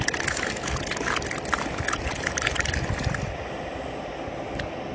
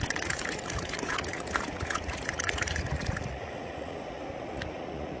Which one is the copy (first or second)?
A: second